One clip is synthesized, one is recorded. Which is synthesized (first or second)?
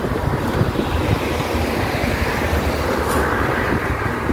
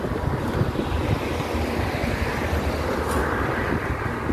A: first